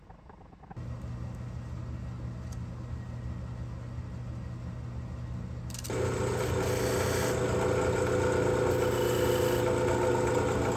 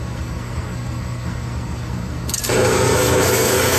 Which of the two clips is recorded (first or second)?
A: first